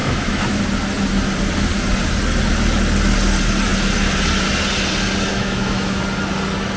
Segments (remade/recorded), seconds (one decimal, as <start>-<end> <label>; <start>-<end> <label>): 0.0-0.6 remade; 0.6-5.3 recorded; 5.3-6.0 remade; 6.0-6.8 recorded

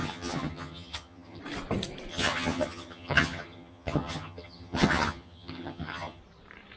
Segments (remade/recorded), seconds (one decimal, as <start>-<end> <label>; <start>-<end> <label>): 0.0-1.4 remade; 1.4-2.1 recorded; 2.1-6.2 remade; 6.2-6.8 recorded

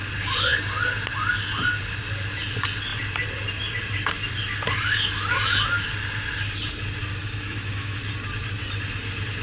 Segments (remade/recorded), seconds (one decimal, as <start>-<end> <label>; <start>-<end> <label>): 0.0-7.2 recorded; 7.2-8.0 remade; 8.0-9.4 recorded

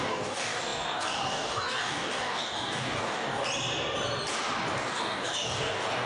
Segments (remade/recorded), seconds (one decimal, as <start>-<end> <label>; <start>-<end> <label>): 0.0-3.4 remade; 3.4-4.8 recorded; 4.8-6.1 remade

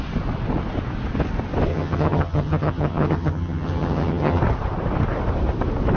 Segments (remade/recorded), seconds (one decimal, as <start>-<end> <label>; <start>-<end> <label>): 0.0-1.7 recorded; 1.7-4.4 remade; 4.4-6.0 recorded

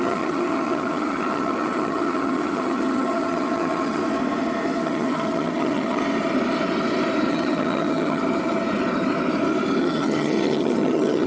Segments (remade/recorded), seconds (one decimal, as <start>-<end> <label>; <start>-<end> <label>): 0.0-4.0 remade; 4.0-4.8 recorded; 4.8-6.0 remade; 6.0-7.3 recorded; 7.3-8.2 remade; 8.2-9.8 recorded; 9.8-11.3 remade